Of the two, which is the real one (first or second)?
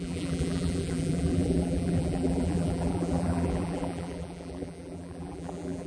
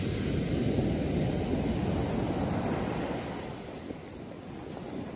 second